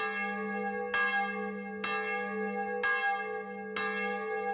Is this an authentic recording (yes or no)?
yes